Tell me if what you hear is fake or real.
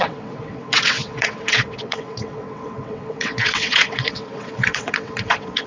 fake